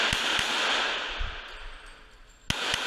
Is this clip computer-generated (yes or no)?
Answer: no